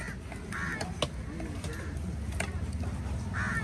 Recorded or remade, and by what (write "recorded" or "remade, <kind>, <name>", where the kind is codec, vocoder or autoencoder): recorded